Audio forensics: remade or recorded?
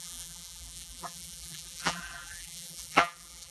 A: remade